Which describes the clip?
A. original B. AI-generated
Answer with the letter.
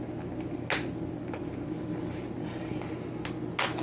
A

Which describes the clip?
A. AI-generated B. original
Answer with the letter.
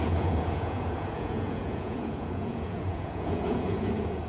A